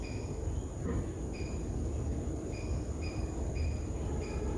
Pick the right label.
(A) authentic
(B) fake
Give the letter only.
B